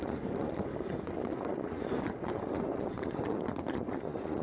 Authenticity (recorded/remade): remade